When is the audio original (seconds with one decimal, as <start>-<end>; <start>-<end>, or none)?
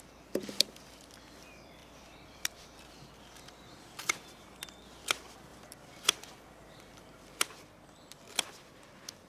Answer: none